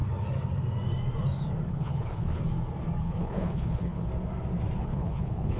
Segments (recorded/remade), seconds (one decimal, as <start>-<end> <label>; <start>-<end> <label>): 0.0-1.7 recorded; 1.7-2.4 remade; 2.4-3.0 recorded; 3.0-4.1 remade; 4.1-4.8 recorded; 4.8-5.6 remade